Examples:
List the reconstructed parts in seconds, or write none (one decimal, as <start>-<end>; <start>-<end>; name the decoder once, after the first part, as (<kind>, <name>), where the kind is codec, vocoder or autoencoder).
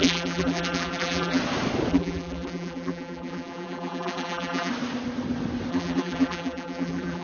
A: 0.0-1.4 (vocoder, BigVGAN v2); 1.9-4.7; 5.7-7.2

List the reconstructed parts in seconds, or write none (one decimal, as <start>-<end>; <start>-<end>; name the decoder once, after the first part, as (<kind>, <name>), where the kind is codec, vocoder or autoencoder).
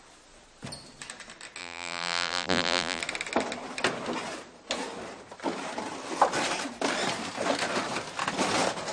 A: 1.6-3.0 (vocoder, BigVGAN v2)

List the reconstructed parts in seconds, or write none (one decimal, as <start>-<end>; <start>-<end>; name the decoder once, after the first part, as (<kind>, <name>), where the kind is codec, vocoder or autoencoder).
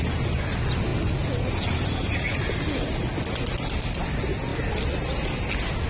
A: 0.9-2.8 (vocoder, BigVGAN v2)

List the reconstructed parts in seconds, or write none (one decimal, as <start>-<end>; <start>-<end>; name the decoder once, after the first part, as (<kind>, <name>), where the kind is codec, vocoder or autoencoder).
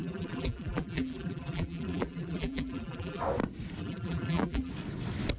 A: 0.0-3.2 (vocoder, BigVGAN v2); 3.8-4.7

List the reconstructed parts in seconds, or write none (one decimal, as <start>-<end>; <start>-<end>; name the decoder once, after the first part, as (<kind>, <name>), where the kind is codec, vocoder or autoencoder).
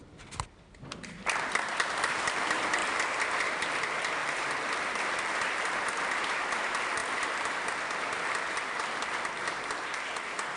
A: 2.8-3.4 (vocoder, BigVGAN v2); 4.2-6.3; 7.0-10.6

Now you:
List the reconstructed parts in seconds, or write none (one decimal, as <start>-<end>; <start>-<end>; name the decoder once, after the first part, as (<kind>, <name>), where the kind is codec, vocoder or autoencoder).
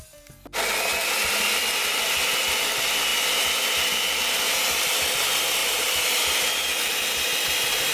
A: 0.9-1.6 (vocoder, BigVGAN v2); 5.6-6.7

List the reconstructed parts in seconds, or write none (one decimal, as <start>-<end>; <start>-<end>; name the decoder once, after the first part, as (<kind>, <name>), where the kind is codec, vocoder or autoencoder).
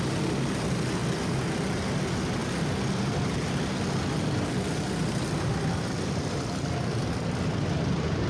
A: none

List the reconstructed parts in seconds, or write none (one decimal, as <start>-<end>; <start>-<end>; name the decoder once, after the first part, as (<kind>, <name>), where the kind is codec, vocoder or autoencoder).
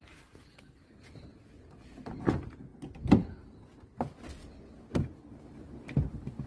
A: 0.0-2.7 (vocoder, BigVGAN v2); 4.8-6.5